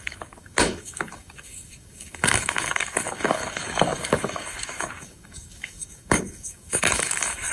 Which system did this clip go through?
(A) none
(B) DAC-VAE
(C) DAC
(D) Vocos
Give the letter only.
C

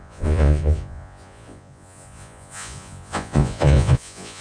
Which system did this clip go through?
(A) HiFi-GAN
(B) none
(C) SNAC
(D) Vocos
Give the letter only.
D